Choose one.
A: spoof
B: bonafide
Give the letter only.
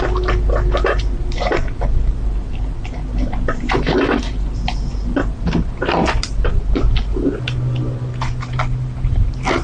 B